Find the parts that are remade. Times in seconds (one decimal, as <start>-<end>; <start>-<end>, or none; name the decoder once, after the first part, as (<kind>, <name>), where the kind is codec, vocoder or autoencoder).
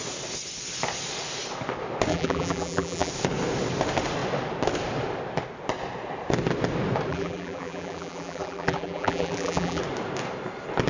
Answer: 2.1-3.1 (vocoder, BigVGAN v2); 7.1-9.8